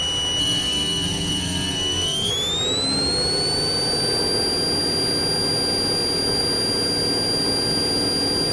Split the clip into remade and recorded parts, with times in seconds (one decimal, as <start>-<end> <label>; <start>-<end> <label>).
0.0-0.4 recorded; 0.4-2.3 remade; 2.3-8.5 recorded